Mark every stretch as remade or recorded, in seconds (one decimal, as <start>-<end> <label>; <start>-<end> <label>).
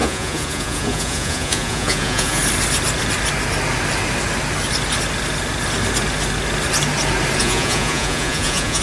0.0-2.4 remade; 2.4-7.4 recorded; 7.4-8.8 remade